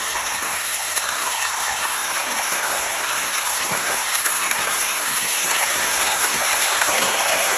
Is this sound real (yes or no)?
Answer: no